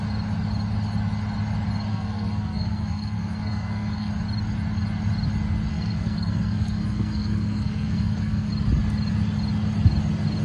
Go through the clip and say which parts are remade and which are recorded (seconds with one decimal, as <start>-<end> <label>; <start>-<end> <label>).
0.0-1.9 recorded; 1.9-4.1 remade; 4.1-5.7 recorded; 5.7-8.5 remade; 8.5-10.4 recorded